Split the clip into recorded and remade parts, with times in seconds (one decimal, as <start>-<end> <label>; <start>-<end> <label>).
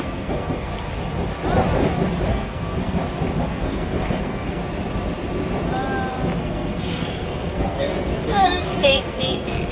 0.0-0.7 remade; 0.7-2.3 recorded; 2.3-3.0 remade; 3.0-3.5 recorded; 3.5-4.6 remade; 4.6-6.4 recorded; 6.4-9.7 remade